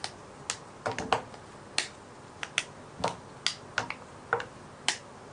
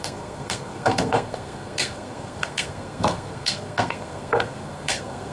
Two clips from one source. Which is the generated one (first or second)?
second